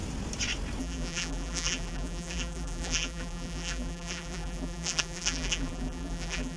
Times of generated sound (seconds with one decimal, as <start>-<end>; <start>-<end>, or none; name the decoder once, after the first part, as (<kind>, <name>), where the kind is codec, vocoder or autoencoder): 0.8-6.6 (vocoder, BigVGAN v2)